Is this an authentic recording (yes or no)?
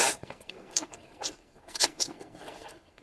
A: no